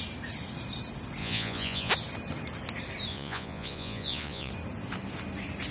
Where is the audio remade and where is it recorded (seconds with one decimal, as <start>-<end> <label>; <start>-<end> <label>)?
0.0-1.2 recorded; 1.2-1.9 remade; 1.9-3.1 recorded; 3.1-4.5 remade; 4.5-5.7 recorded